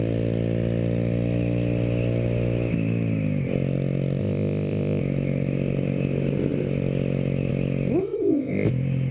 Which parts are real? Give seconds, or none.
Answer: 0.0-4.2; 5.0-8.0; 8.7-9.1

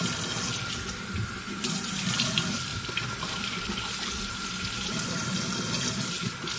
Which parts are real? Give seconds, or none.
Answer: 0.0-6.6